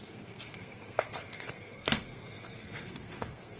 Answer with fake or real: fake